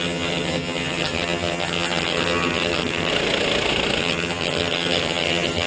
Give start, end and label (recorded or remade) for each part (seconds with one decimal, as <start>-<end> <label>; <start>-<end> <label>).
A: 0.0-3.1 remade; 3.1-4.0 recorded; 4.0-5.7 remade